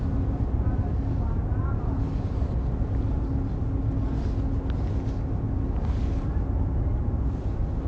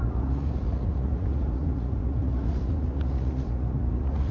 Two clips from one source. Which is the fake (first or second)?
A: second